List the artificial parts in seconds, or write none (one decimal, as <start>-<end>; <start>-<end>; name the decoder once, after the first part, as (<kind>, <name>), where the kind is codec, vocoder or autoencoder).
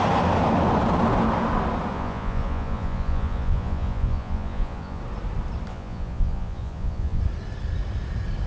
1.9-5.0 (vocoder, Vocos); 5.7-7.2